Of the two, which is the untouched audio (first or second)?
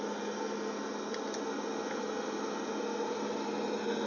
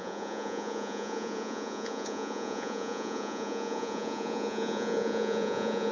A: first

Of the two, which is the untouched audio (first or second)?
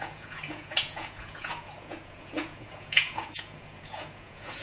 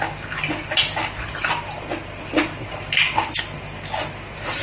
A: second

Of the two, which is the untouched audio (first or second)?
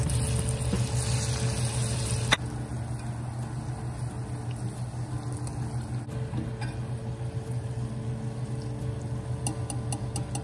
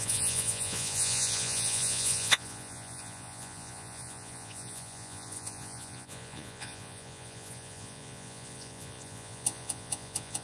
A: first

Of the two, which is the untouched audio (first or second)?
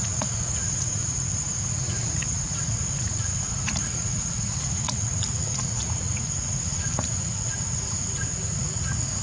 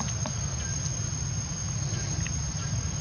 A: second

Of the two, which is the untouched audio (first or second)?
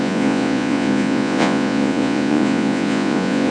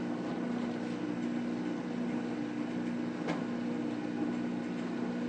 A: second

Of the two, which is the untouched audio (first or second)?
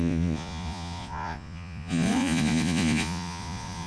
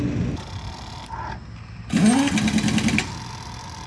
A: second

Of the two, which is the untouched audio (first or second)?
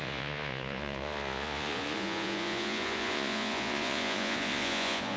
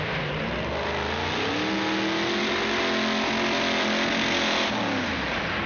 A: second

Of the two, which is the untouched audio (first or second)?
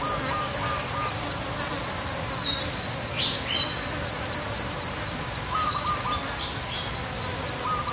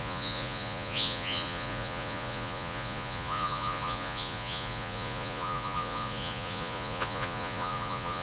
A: first